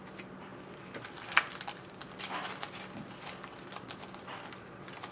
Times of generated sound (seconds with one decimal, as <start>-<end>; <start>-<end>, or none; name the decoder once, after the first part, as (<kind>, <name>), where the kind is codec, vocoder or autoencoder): none